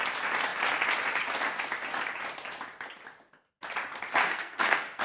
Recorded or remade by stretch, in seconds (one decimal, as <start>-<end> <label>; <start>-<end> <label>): 0.0-4.2 recorded; 4.2-5.0 remade